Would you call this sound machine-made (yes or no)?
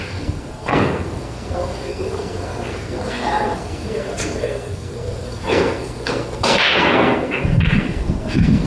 yes